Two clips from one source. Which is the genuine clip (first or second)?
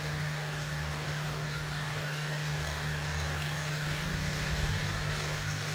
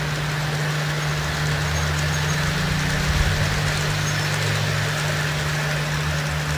second